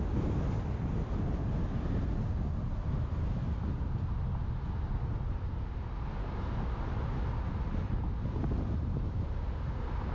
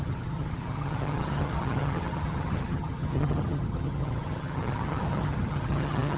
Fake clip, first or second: second